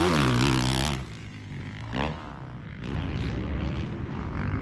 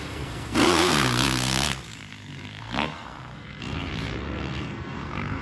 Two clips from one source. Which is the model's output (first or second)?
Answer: second